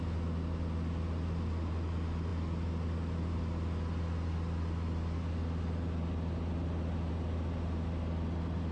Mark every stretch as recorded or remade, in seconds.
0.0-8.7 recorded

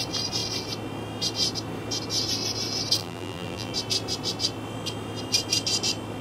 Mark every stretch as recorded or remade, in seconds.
0.0-3.0 recorded; 3.0-3.7 remade; 3.7-6.2 recorded

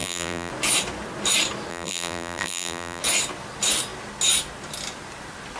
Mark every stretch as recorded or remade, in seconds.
0.0-0.5 remade; 0.5-1.7 recorded; 1.7-3.0 remade; 3.0-5.6 recorded

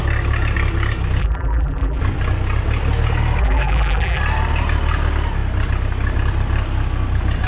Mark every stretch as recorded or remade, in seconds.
0.0-1.2 recorded; 1.2-2.0 remade; 2.0-3.4 recorded; 3.4-4.2 remade; 4.2-7.5 recorded

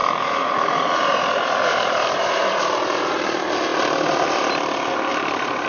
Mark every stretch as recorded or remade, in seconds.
0.0-3.3 remade; 3.3-5.1 recorded; 5.1-5.7 remade

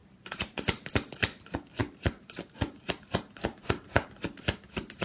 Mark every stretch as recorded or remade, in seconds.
0.0-0.9 remade; 0.9-1.8 recorded; 1.8-5.0 remade

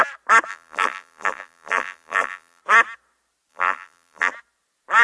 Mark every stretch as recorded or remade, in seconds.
0.0-0.5 recorded; 0.5-2.6 remade; 2.6-3.5 recorded; 3.5-4.3 remade; 4.3-5.0 recorded

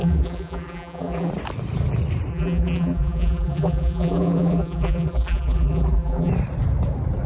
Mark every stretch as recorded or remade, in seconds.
0.0-1.3 remade; 1.3-2.3 recorded; 2.3-6.3 remade; 6.3-7.3 recorded